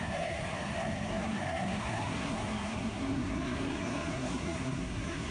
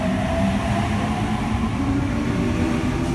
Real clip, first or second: second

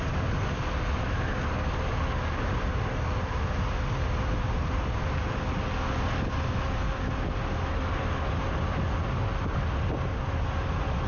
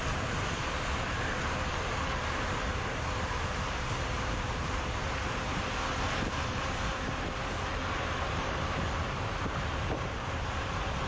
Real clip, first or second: first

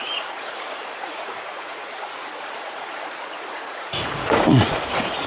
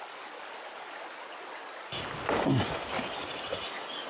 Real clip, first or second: second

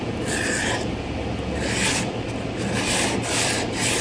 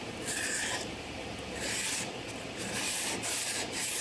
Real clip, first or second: first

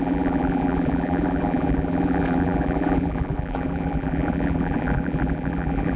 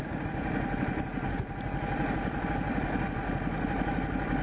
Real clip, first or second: second